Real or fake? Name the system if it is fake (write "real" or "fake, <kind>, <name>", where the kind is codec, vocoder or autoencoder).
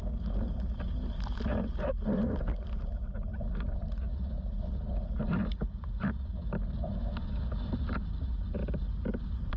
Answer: real